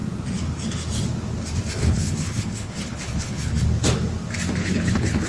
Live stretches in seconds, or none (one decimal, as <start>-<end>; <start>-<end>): 0.0-1.8; 3.6-4.6